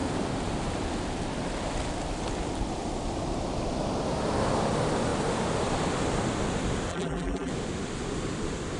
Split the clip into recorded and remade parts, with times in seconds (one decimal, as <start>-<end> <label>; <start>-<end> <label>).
0.0-6.9 recorded; 6.9-7.5 remade; 7.5-8.8 recorded